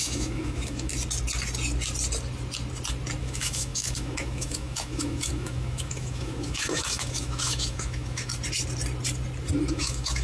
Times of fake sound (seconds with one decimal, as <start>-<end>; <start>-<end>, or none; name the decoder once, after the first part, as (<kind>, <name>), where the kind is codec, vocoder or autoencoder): 0.0-0.9 (autoencoder, DAC-VAE); 3.2-8.3; 9.7-10.2